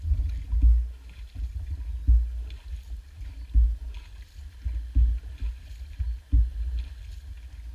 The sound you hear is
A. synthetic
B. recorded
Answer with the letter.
B